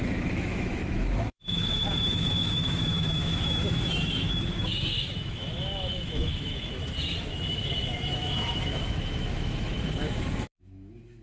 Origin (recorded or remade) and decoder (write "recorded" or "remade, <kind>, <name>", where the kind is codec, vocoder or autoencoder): remade, autoencoder, DAC-VAE